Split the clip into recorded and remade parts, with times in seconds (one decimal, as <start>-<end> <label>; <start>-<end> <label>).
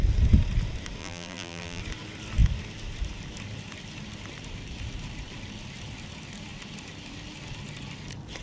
0.0-1.0 recorded; 1.0-1.8 remade; 1.8-8.4 recorded